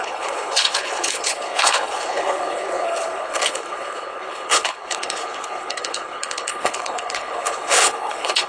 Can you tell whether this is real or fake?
fake